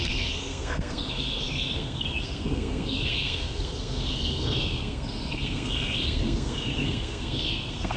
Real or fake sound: fake